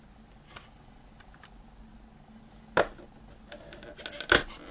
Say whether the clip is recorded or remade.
recorded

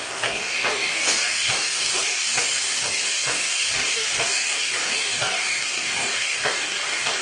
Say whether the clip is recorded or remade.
remade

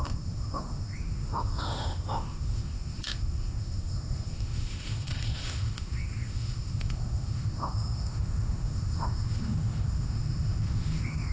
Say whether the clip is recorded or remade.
remade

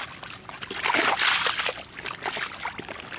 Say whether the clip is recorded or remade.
recorded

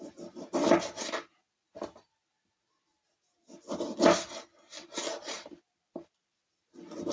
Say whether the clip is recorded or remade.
recorded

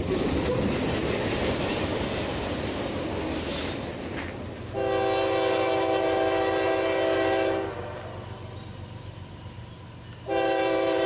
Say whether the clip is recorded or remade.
recorded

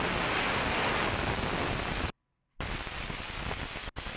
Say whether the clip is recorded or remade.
recorded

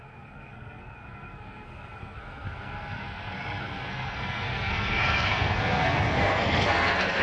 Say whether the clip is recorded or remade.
remade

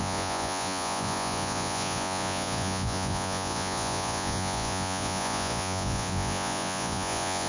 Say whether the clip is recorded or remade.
remade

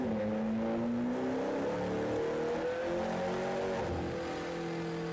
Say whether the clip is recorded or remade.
recorded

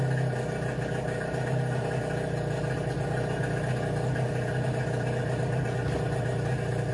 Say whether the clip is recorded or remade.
recorded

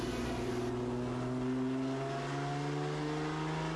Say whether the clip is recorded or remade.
recorded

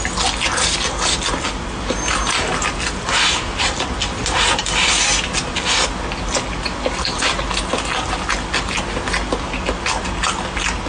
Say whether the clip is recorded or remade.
recorded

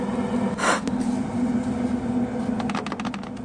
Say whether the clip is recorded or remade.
recorded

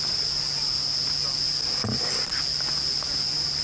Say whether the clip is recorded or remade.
recorded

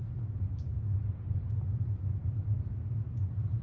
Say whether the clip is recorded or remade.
recorded